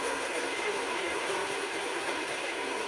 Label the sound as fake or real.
fake